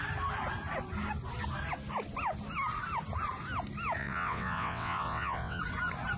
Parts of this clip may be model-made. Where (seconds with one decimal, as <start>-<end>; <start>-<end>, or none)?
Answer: 4.0-5.6